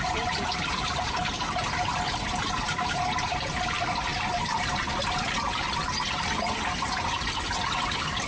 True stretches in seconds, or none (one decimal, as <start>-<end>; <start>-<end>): 0.0-8.3